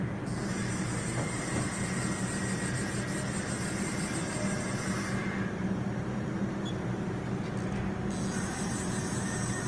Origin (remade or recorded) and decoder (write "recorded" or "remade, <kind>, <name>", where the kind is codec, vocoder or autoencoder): recorded